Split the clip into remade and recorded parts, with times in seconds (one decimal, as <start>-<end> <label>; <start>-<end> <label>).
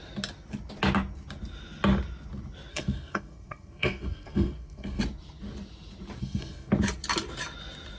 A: 0.0-2.7 recorded; 2.7-5.0 remade; 5.0-6.2 recorded; 6.2-6.7 remade; 6.7-8.0 recorded